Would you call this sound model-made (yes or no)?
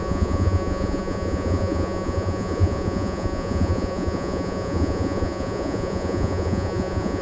yes